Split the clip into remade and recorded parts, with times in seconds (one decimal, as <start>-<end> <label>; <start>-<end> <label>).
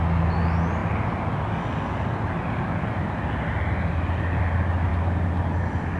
0.0-6.0 recorded